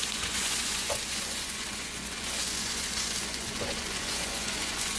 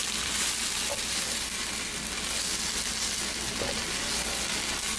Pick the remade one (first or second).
first